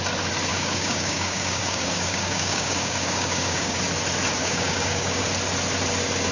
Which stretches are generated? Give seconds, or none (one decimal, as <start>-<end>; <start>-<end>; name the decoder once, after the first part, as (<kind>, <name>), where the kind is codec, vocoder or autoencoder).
0.5-3.8 (codec, DAC); 4.4-5.2